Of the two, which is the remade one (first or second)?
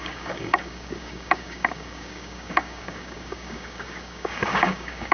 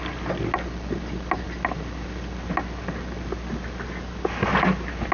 first